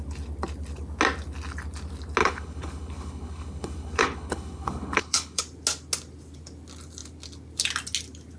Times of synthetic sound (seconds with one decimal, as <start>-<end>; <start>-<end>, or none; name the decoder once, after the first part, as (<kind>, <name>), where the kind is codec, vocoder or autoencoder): 2.2-5.4 (codec, HILCodec)